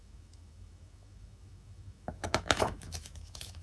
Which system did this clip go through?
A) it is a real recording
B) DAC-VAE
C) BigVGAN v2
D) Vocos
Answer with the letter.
B